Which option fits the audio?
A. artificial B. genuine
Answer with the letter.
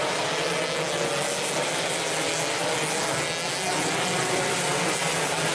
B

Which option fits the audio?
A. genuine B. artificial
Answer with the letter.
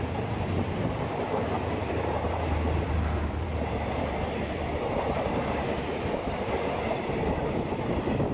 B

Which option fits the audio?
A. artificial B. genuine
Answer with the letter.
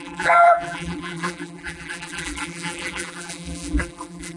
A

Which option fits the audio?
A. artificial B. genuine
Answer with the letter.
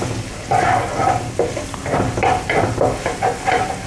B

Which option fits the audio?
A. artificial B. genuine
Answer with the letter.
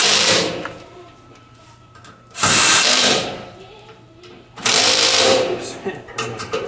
A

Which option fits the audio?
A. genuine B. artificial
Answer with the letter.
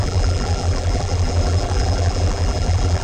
B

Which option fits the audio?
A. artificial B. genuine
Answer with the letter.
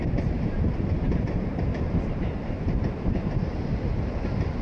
A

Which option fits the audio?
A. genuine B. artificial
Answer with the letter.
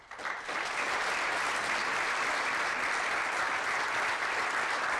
B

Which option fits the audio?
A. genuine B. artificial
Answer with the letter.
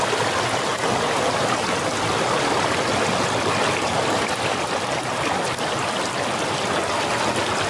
A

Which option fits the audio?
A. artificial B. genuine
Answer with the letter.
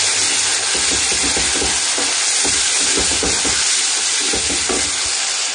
B